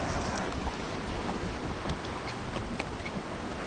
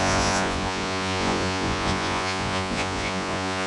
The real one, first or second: first